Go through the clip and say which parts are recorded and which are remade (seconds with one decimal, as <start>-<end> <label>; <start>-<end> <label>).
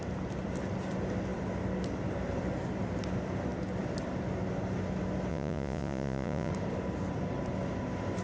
0.0-5.3 recorded; 5.3-6.5 remade; 6.5-8.2 recorded